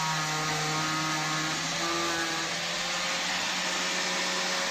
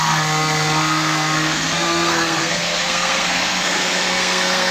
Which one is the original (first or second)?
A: first